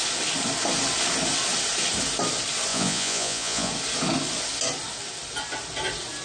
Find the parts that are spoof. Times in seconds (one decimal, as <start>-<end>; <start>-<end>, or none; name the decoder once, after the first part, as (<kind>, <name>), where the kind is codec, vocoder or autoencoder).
2.7-3.7 (vocoder, Vocos)